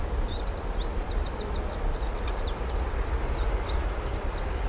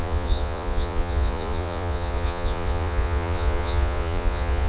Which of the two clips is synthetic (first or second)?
second